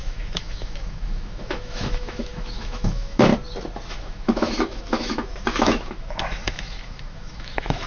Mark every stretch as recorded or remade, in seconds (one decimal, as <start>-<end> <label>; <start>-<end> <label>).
0.0-3.3 remade; 3.3-3.9 recorded; 3.9-7.9 remade